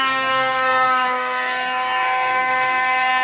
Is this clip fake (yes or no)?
yes